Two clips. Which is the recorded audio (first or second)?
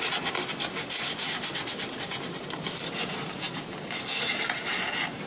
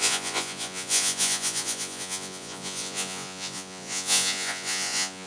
first